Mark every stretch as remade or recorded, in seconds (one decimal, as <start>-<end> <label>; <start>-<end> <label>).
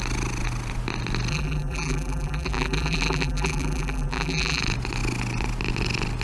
0.0-1.3 recorded; 1.3-4.6 remade; 4.6-6.2 recorded